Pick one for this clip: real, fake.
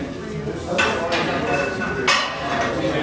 real